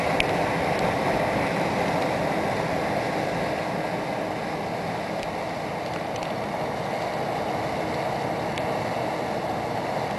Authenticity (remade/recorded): recorded